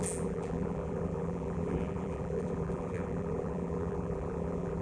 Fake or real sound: fake